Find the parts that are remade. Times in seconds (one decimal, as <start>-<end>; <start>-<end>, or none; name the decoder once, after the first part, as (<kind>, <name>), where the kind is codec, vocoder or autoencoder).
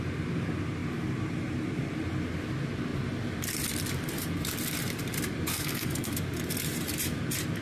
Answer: 5.5-6.1 (codec, SNAC)